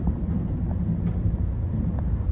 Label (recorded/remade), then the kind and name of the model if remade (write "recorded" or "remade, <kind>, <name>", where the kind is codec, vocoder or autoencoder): recorded